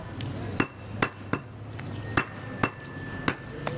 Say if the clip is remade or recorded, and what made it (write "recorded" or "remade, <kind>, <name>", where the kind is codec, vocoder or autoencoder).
recorded